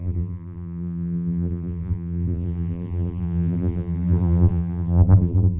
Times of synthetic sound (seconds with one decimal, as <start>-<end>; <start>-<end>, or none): 0.0-5.6